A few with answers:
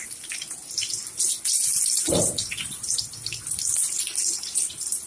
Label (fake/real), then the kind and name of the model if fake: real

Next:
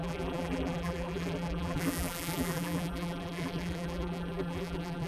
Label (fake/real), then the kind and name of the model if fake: fake, vocoder, BigVGAN v2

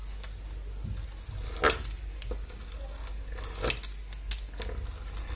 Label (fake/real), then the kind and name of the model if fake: real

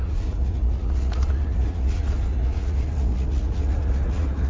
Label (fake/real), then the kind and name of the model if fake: fake, vocoder, Vocos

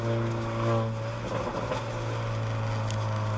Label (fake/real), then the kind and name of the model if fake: real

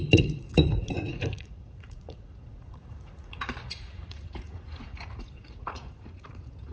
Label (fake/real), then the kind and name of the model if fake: fake, vocoder, Vocos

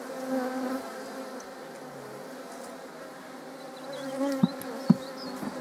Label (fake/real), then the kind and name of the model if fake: real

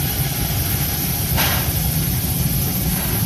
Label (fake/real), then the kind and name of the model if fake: real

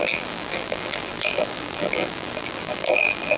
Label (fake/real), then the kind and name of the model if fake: fake, vocoder, BigVGAN v2